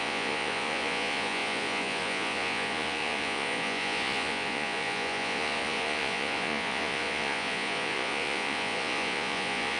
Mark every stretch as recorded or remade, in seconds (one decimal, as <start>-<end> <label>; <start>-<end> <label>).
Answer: 0.0-9.8 remade